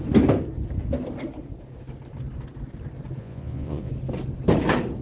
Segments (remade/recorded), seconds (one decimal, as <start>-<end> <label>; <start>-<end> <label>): 0.0-3.2 recorded; 3.2-3.9 remade; 3.9-5.0 recorded